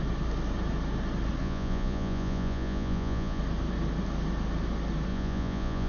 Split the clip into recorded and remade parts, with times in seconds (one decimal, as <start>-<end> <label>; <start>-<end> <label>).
0.0-1.4 recorded; 1.4-3.4 remade; 3.4-5.1 recorded; 5.1-5.9 remade